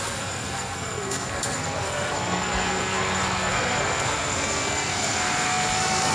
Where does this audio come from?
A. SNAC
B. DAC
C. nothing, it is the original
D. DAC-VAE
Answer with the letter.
A